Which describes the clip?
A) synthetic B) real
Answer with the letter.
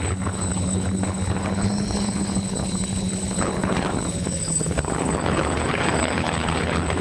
A